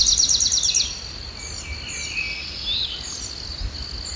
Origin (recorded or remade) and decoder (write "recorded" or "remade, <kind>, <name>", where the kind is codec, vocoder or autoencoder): recorded